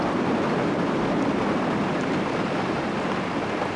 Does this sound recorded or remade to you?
recorded